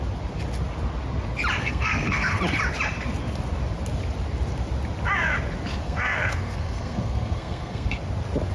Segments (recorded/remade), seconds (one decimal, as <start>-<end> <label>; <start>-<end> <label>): 0.0-1.6 recorded; 1.6-2.4 remade; 2.4-5.7 recorded; 5.7-8.0 remade; 8.0-8.5 recorded